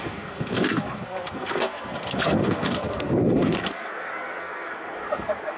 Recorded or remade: remade